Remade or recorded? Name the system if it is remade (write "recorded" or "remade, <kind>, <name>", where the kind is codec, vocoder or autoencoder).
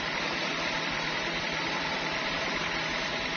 remade, vocoder, BigVGAN v2